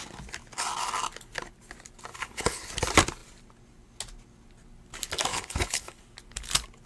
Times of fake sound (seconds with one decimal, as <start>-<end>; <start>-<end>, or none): 2.1-2.7; 5.3-6.0